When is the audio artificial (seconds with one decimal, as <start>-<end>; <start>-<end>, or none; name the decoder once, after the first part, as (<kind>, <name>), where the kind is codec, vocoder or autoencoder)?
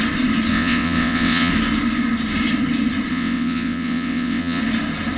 0.5-1.5 (vocoder, WaveNeXt); 3.1-4.6